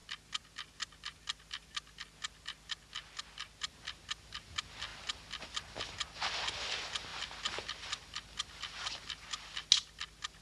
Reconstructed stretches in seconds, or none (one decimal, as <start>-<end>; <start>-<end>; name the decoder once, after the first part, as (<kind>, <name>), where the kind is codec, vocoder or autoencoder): none